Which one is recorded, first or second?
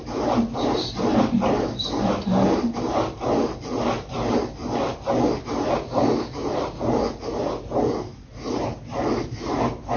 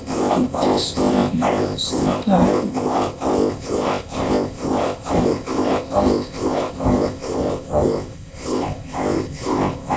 first